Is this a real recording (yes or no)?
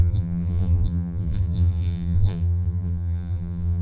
no